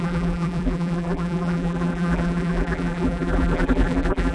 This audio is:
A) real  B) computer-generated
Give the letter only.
B